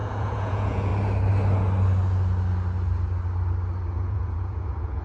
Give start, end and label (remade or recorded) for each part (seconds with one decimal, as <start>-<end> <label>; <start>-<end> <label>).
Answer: 0.0-0.9 remade; 0.9-3.9 recorded; 3.9-5.0 remade